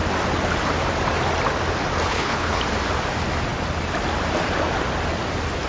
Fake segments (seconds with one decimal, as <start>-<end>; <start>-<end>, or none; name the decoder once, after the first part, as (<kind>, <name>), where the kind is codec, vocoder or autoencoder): 2.1-2.6 (codec, HILCodec)